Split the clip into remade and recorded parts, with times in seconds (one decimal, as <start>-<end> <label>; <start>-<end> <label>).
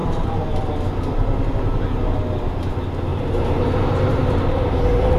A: 0.0-0.7 remade; 0.7-3.1 recorded; 3.1-5.2 remade